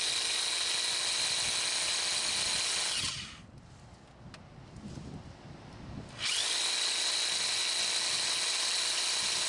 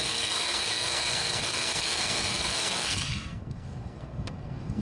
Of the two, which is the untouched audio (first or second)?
first